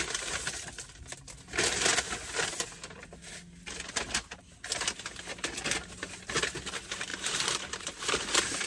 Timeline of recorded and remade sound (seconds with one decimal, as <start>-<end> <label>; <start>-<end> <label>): 0.0-8.7 recorded